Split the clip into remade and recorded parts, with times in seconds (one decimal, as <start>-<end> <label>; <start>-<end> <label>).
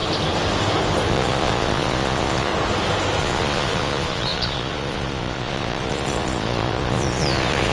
0.0-1.1 recorded; 1.1-2.5 remade; 2.5-3.2 recorded; 3.2-7.7 remade